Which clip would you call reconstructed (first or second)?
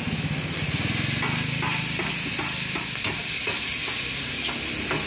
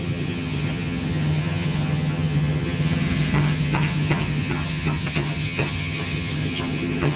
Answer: second